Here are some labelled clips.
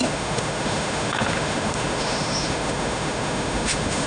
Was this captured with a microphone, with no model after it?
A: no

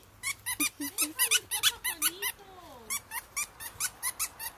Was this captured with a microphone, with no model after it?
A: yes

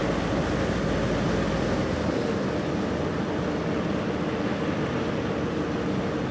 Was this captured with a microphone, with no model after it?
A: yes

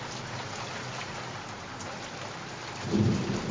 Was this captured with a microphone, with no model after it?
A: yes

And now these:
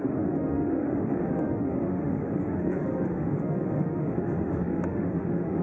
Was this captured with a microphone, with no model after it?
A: no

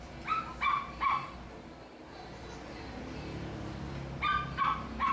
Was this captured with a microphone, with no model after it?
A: yes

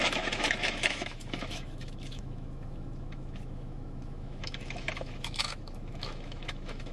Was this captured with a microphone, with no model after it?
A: no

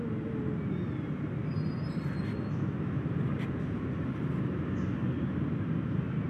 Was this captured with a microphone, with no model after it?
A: yes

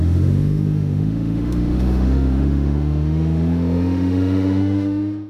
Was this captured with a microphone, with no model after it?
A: no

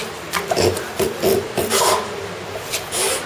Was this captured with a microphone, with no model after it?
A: yes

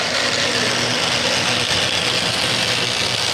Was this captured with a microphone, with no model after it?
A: yes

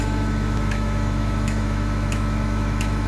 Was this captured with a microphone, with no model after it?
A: no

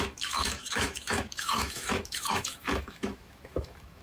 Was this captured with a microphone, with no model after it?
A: no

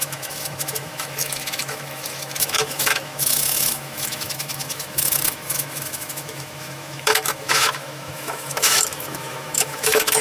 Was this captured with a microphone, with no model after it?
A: no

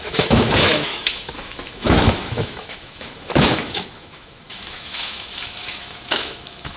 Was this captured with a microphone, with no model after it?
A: no